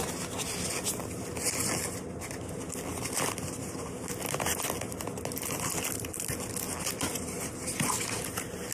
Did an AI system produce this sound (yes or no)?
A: no